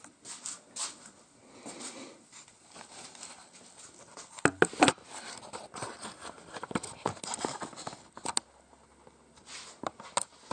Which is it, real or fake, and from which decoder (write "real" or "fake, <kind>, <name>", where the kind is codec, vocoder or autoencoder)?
real